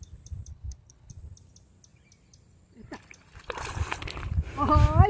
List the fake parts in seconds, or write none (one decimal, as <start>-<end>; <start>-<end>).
0.5-1.1